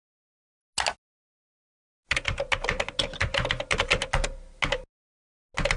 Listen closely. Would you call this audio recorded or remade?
recorded